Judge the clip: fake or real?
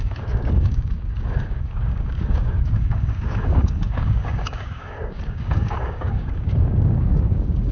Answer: fake